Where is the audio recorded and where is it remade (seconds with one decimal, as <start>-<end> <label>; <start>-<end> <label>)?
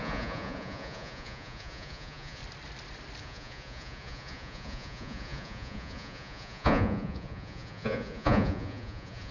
0.0-2.4 remade; 2.4-3.2 recorded; 3.2-9.3 remade